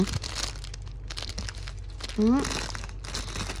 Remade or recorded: recorded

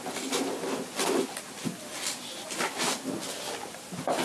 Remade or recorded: recorded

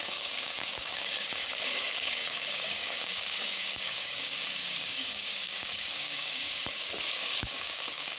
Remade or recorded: remade